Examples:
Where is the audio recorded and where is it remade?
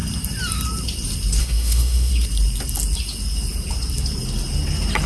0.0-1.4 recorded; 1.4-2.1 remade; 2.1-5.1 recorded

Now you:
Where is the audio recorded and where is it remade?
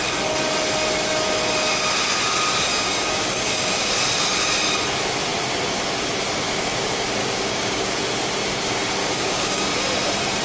0.0-2.7 recorded; 2.7-3.9 remade; 3.9-7.2 recorded; 7.2-8.0 remade; 8.0-9.0 recorded; 9.0-9.7 remade; 9.7-10.4 recorded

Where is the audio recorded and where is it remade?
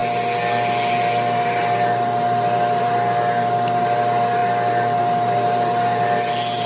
0.0-6.7 recorded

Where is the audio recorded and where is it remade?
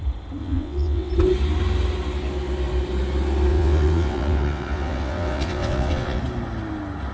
0.0-0.4 recorded; 0.4-1.1 remade; 1.1-3.5 recorded; 3.5-6.2 remade; 6.2-7.1 recorded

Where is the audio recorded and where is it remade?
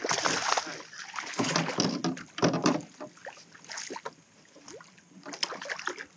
0.0-6.2 recorded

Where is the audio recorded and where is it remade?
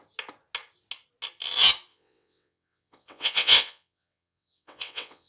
0.0-1.9 recorded; 1.9-5.3 remade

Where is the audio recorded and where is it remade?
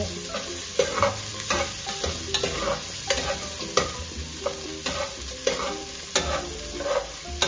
0.0-7.5 recorded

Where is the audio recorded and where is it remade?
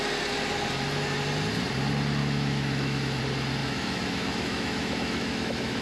0.0-2.2 recorded; 2.2-3.2 remade; 3.2-3.6 recorded; 3.6-5.8 remade